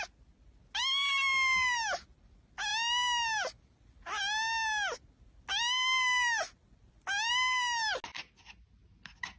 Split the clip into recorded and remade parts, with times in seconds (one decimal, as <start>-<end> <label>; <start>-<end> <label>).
0.0-9.4 recorded